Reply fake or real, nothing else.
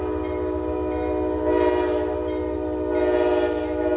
real